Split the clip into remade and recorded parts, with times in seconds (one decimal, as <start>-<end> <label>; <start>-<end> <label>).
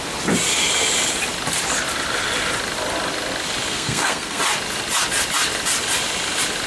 0.0-3.7 recorded; 3.7-4.4 remade; 4.4-6.7 recorded